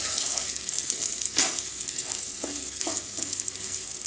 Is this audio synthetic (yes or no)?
yes